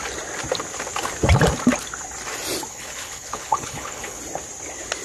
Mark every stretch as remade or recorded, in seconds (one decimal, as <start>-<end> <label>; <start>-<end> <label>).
0.0-2.7 recorded; 2.7-4.2 remade; 4.2-5.0 recorded